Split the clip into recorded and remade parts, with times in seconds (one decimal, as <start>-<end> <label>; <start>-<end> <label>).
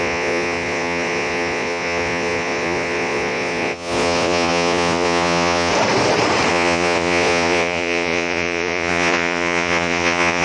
0.0-5.7 remade; 5.7-6.5 recorded; 6.5-10.4 remade